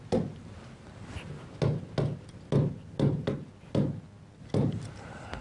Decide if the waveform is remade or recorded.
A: recorded